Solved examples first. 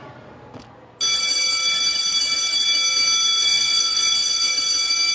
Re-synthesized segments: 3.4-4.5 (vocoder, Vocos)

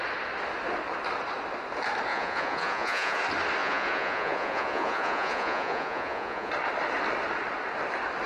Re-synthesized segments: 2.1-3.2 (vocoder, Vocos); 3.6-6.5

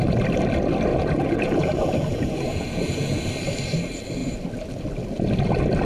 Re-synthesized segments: 0.9-3.2 (vocoder, Vocos)

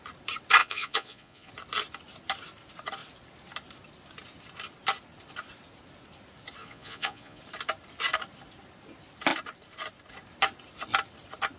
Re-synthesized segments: 0.6-1.5 (vocoder, Vocos); 6.6-7.4

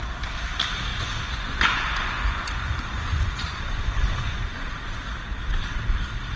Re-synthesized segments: 0.9-4.7 (vocoder, Vocos)

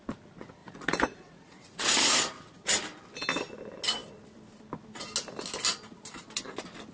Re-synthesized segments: 0.6-2.2 (vocoder, Vocos)

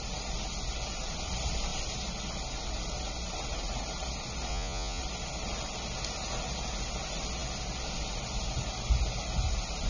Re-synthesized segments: 4.5-5.0 (vocoder, Vocos)